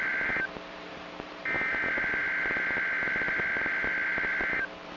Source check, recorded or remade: remade